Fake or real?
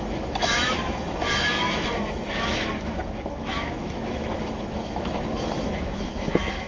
fake